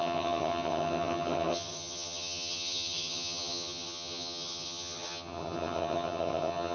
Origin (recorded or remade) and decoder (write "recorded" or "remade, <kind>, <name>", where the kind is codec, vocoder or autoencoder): remade, vocoder, HiFi-GAN